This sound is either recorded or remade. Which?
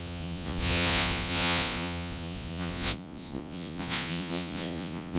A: remade